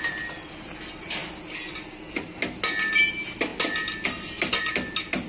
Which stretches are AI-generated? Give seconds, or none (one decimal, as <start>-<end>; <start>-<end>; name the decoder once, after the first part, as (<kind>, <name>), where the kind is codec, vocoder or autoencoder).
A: none